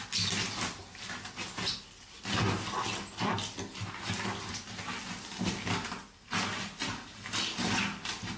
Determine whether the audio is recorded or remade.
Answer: recorded